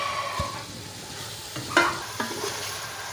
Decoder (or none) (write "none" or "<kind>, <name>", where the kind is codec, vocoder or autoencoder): none